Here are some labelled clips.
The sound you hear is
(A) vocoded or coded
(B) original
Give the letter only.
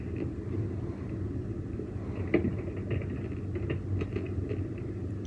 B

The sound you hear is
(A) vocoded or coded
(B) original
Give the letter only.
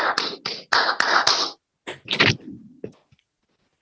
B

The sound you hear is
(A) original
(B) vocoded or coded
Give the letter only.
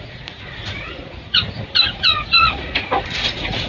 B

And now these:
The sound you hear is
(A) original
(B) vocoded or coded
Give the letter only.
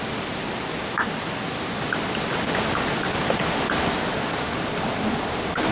A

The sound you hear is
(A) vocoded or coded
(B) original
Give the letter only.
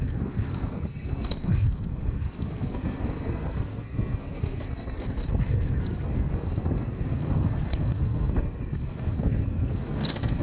A